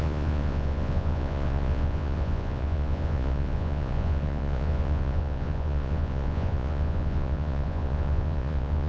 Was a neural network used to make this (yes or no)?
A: yes